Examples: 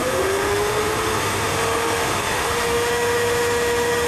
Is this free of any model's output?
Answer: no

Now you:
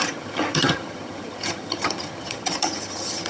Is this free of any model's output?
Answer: no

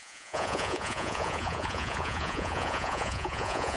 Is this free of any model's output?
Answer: no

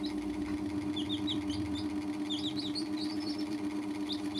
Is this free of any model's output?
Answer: no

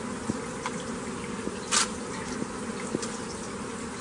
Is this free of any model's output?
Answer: yes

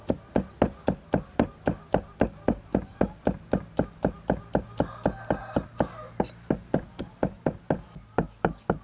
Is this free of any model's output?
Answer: yes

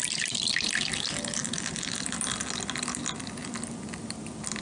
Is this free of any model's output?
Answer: yes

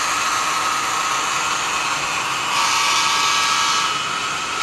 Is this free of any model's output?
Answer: yes